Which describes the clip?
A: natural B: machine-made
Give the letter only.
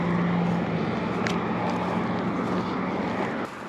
A